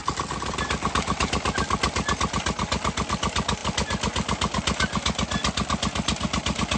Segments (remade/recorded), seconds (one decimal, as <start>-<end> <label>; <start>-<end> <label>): 0.0-6.8 recorded